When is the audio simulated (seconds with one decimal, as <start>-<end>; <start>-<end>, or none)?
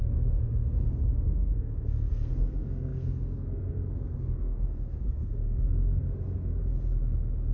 0.0-6.5